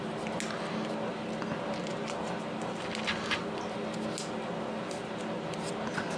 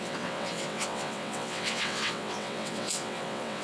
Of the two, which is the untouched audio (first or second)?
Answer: first